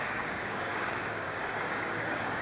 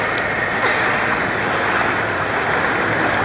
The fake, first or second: first